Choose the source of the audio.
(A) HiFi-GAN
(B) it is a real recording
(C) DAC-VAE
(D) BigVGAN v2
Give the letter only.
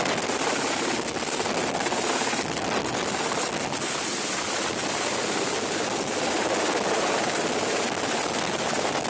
B